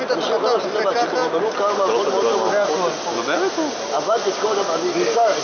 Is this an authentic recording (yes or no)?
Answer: yes